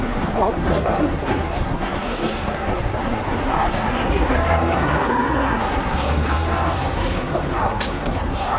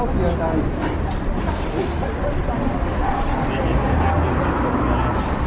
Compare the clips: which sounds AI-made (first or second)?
first